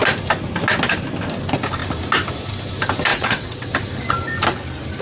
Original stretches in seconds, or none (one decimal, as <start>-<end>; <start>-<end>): 0.0-3.1; 3.7-5.0

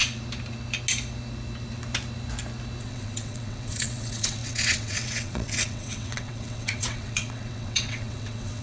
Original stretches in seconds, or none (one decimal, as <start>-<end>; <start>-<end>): 0.0-2.8

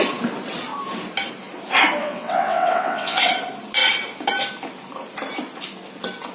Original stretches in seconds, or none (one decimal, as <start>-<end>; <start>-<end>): 0.0-2.0; 3.2-6.3

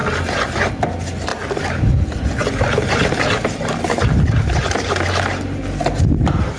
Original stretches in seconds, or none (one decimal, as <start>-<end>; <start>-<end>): 0.0-6.6

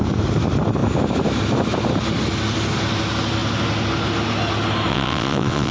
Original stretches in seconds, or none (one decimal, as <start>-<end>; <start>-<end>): 0.0-4.9